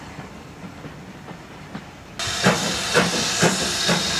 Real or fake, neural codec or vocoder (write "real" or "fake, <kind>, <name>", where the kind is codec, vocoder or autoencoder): real